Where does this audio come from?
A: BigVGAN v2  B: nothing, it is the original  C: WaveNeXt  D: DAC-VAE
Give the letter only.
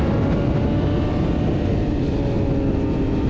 B